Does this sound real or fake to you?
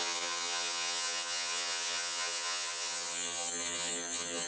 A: fake